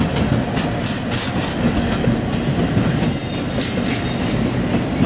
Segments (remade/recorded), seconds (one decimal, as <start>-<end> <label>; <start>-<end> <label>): 0.0-5.1 recorded